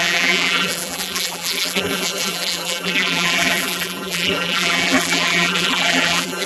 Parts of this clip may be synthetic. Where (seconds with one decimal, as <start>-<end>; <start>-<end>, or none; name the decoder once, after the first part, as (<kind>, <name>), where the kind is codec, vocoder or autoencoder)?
0.0-6.5 (vocoder, BigVGAN v2)